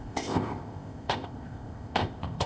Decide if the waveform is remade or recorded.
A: remade